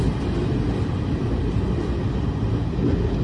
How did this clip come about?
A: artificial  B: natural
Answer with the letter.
B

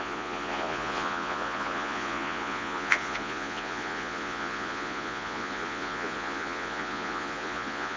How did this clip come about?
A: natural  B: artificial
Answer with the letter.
B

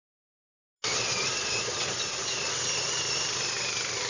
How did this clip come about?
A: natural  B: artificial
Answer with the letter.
A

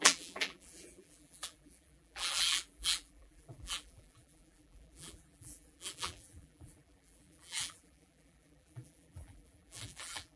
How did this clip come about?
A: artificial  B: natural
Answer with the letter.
A